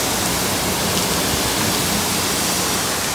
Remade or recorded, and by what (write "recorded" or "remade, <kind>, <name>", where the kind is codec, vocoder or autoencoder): recorded